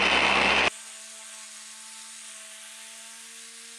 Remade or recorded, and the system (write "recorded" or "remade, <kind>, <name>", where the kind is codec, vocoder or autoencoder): recorded